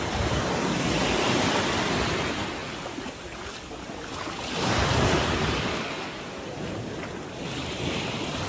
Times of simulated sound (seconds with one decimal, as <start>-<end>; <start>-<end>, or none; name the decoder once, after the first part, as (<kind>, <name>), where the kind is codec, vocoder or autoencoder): none

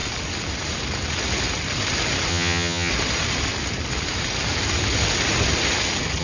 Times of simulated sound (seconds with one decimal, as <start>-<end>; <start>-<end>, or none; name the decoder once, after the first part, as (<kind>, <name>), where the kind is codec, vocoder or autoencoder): 2.3-2.9 (vocoder, HiFi-GAN)

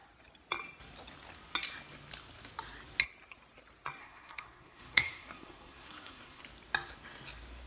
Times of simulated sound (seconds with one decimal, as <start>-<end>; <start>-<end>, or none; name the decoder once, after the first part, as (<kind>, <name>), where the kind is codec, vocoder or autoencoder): 4.0-6.4 (codec, SNAC)